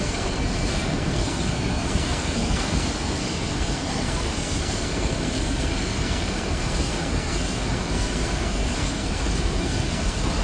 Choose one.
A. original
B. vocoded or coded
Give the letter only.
B